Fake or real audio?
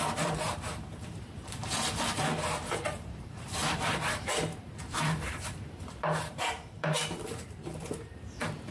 fake